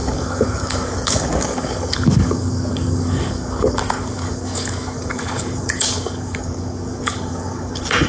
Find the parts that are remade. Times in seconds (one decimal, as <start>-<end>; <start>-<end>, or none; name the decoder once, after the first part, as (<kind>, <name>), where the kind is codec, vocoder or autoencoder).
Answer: 0.0-8.1 (codec, DAC)